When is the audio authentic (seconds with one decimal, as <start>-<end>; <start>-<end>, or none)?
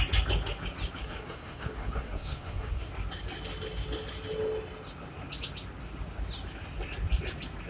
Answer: 0.0-1.0; 2.9-7.7